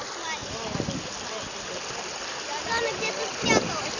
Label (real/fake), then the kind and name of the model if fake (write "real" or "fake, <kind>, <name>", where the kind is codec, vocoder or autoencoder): real